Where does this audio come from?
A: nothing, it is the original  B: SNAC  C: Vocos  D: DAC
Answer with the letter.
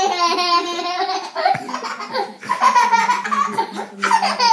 A